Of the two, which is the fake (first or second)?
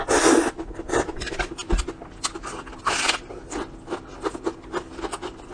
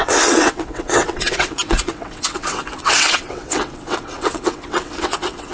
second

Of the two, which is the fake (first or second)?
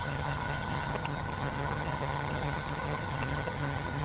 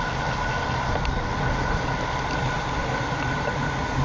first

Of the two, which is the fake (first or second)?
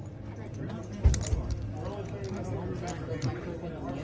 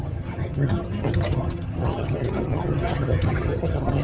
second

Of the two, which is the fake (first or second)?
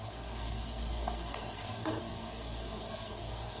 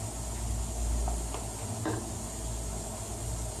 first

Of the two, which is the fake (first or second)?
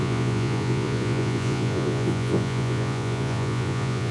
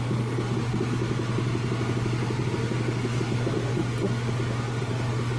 first